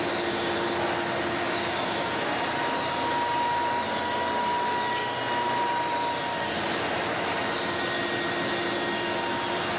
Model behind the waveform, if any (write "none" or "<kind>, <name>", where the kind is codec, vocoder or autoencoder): none